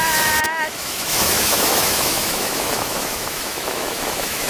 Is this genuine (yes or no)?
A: no